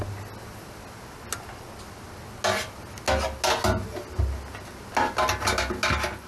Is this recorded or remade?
recorded